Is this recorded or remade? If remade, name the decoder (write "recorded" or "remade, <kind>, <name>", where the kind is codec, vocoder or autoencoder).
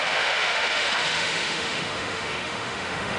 remade, autoencoder, DAC-VAE